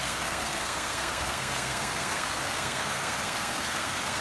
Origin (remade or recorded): remade